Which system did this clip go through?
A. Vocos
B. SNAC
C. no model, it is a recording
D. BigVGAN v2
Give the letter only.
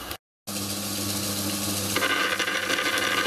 C